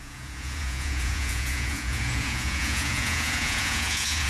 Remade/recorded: remade